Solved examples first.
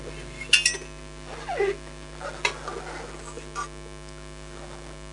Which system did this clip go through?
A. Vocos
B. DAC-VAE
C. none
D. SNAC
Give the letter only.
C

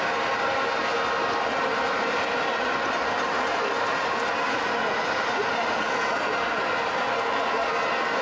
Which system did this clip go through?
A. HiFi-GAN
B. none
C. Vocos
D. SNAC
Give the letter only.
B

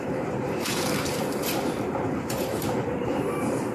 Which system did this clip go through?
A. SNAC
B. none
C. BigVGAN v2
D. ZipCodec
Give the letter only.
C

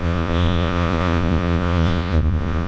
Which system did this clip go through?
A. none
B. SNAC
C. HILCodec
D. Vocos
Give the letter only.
D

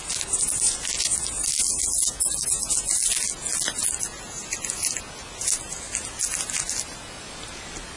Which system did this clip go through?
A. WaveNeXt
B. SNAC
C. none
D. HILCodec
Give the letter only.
C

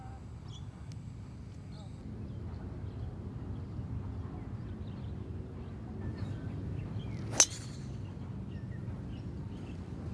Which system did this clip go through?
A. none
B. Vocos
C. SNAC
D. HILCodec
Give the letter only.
A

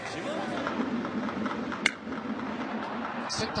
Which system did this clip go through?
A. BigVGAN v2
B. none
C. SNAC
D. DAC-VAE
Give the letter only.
B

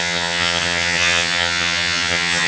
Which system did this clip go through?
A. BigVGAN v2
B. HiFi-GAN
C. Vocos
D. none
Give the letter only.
B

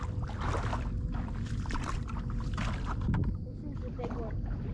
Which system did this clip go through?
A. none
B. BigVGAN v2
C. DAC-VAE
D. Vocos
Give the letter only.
A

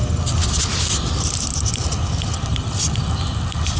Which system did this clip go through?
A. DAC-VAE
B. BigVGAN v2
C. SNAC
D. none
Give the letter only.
D